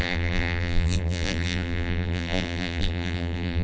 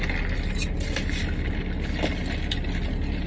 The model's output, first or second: first